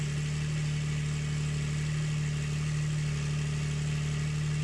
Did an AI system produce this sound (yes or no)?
no